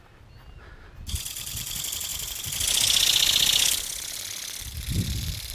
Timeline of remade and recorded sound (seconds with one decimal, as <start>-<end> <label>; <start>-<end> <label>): 0.0-5.5 recorded